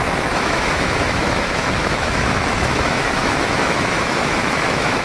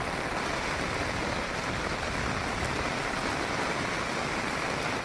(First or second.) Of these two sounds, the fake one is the first